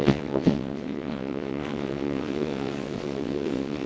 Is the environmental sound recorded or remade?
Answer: remade